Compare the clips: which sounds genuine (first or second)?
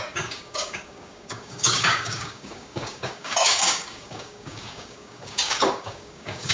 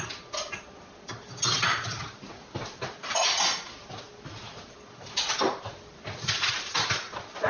second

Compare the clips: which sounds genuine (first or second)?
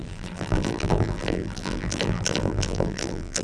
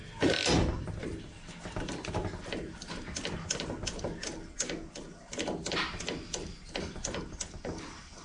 second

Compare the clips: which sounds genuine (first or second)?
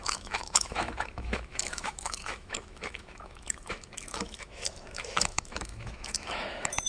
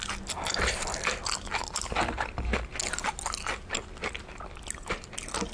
second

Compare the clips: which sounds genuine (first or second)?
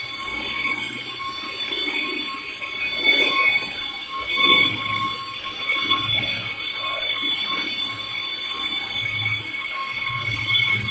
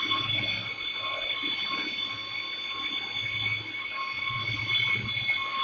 second